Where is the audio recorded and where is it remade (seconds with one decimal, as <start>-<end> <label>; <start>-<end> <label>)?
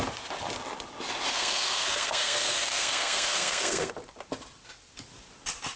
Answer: 0.0-1.3 recorded; 1.3-3.9 remade; 3.9-5.8 recorded